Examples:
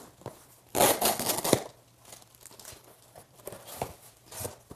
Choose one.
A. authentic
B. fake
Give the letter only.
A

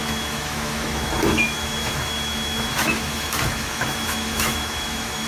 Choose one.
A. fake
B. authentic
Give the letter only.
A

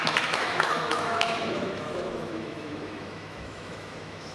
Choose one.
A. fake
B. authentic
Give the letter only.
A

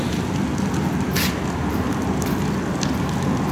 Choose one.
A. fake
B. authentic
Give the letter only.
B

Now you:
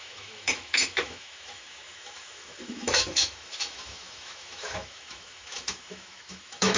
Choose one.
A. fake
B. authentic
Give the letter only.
A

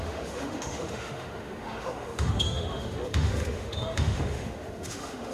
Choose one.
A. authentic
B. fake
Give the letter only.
B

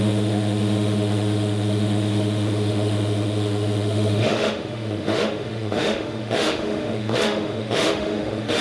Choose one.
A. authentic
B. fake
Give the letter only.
B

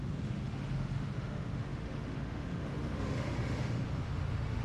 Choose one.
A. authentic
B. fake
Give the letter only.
B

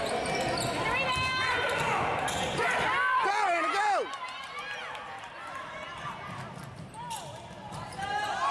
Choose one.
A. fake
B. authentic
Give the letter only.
B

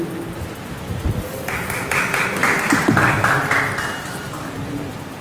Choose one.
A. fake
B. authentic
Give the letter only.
B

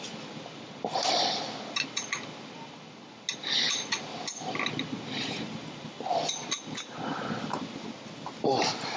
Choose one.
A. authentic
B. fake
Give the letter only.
A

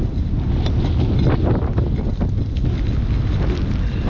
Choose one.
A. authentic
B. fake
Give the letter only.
A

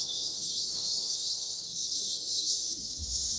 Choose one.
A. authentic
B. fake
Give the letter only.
B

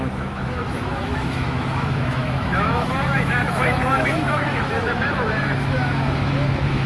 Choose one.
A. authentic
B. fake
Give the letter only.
B